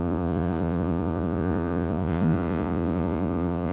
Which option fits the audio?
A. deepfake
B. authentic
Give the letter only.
A